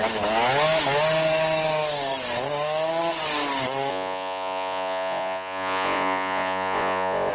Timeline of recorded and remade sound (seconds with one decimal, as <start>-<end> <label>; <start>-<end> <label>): 0.0-3.9 recorded; 3.9-7.3 remade